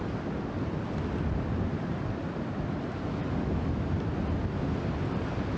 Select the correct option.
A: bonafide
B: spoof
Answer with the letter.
A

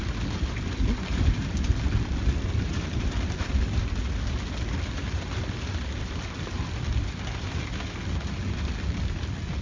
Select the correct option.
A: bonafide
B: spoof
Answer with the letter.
A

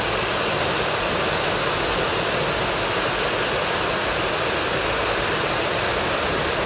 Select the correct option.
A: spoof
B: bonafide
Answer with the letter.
B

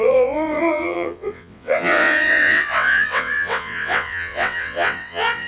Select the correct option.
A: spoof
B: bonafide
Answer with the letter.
A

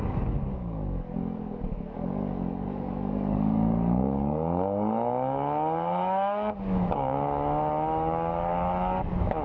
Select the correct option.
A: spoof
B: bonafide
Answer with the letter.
A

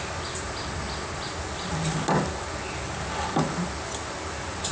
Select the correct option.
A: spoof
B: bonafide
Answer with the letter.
B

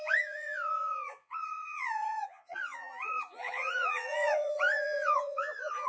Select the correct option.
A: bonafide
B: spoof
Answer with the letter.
B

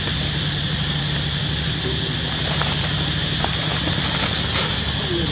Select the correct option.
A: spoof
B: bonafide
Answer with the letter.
B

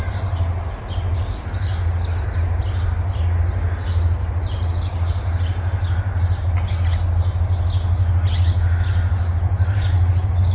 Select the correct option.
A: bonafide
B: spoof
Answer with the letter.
A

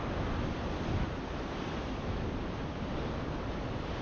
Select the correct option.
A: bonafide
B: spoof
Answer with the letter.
A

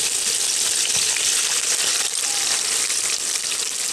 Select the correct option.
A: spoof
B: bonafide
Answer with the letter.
B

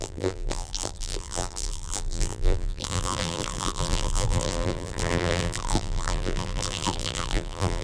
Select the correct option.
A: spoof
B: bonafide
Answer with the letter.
A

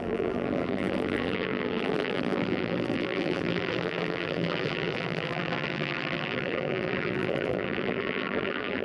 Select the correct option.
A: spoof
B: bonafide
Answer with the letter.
A